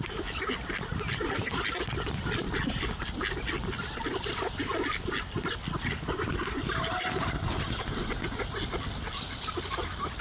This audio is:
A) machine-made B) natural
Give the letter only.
B